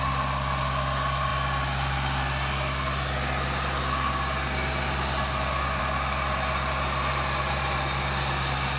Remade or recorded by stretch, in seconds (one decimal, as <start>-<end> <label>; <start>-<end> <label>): 0.0-8.8 recorded